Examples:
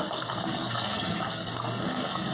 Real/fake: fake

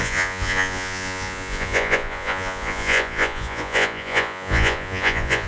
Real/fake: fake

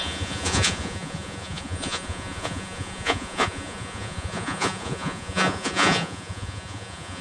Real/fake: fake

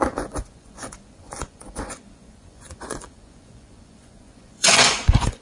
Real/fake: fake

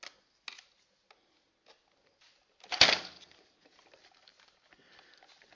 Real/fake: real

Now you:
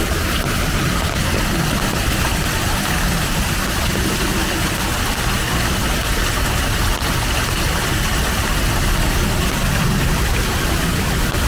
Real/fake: real